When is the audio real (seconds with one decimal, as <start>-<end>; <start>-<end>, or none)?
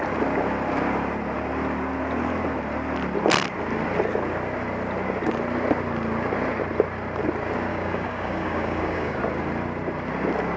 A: 0.0-7.7; 9.2-10.6